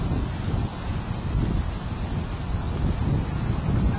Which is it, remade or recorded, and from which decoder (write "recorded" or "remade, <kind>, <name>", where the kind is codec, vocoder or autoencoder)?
recorded